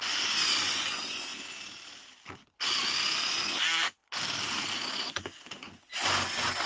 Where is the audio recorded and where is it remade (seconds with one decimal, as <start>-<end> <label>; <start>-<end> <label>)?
0.0-1.3 remade; 1.3-2.6 recorded; 2.6-4.0 remade; 4.0-5.1 recorded; 5.1-6.7 remade